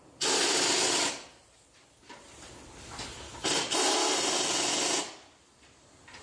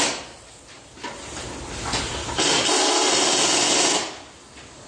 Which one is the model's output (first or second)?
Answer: first